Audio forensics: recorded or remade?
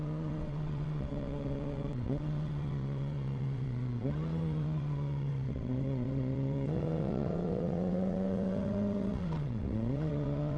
remade